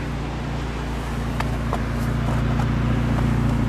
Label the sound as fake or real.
real